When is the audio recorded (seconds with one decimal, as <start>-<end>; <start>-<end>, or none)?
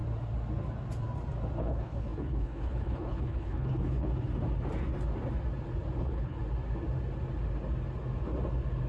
0.0-1.6; 4.1-6.0; 6.4-8.9